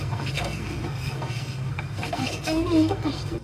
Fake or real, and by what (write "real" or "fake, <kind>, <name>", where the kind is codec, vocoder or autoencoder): fake, codec, SNAC